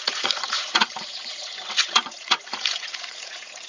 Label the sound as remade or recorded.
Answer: remade